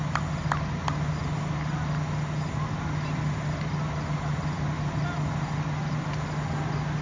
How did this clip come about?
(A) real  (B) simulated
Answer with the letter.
A